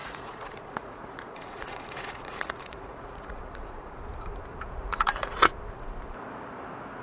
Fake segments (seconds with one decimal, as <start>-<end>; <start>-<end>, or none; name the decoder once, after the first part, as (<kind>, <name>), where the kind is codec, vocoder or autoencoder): 0.0-3.9 (vocoder, Vocos); 4.5-5.5

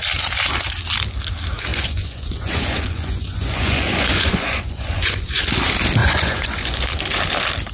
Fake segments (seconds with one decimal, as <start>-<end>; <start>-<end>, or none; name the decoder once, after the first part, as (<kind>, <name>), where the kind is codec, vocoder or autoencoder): 1.7-5.4 (vocoder, Vocos); 6.0-6.8

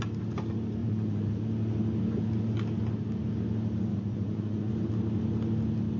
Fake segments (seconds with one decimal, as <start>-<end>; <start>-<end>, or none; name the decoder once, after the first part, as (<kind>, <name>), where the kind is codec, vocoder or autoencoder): 0.8-1.3 (vocoder, Vocos); 3.9-4.7

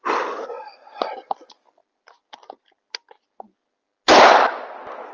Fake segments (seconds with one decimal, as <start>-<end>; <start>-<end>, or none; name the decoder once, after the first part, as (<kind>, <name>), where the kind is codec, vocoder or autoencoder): none

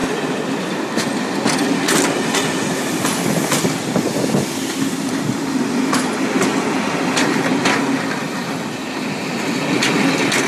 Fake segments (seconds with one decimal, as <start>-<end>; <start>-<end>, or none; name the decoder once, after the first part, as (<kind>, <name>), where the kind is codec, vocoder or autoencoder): none

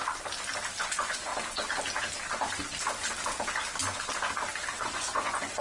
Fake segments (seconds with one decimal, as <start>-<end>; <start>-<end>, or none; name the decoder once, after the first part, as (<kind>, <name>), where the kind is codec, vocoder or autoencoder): 0.8-1.3 (vocoder, Vocos); 4.7-5.6